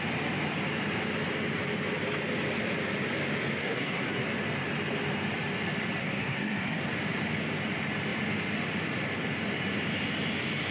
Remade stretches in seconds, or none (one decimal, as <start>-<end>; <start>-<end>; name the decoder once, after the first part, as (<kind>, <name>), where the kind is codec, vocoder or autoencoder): 3.6-4.2 (codec, SNAC); 6.0-6.8